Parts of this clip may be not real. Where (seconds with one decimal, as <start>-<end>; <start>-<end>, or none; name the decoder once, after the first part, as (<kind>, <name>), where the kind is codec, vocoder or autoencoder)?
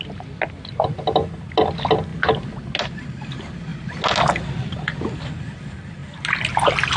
none